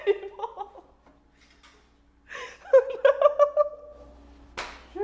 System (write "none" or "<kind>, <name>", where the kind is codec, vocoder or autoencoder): none